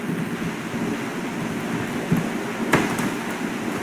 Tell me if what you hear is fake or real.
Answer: real